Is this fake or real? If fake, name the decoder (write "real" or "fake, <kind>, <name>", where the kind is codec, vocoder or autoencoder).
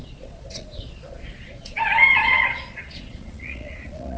fake, vocoder, Vocos